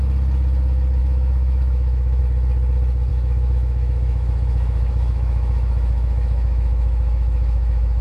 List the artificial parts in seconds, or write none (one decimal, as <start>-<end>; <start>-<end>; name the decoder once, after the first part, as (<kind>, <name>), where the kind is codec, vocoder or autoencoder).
1.0-2.2 (autoencoder, DAC-VAE); 3.1-8.0